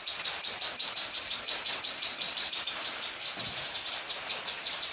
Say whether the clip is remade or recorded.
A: recorded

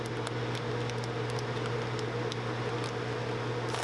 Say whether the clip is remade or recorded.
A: recorded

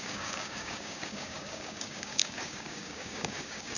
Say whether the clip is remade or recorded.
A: remade